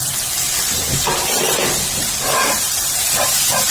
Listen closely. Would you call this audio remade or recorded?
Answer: recorded